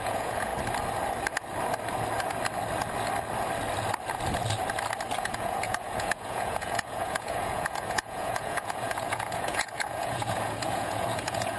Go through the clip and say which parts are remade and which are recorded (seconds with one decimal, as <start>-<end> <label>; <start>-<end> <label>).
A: 0.0-0.5 remade; 0.5-5.2 recorded; 5.2-11.6 remade